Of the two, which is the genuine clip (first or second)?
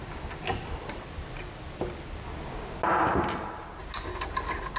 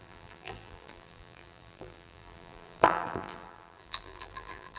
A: first